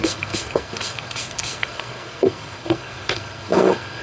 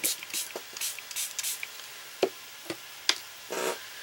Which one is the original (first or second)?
second